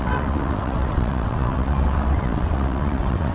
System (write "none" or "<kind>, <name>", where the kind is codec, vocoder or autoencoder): vocoder, WaveNeXt